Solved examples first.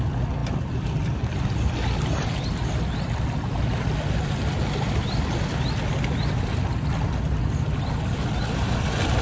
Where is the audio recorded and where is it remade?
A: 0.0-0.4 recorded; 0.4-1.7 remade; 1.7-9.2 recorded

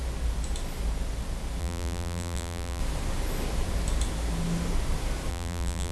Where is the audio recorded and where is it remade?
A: 0.0-1.6 recorded; 1.6-2.8 remade; 2.8-5.3 recorded; 5.3-5.9 remade